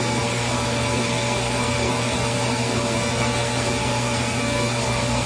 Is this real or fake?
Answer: fake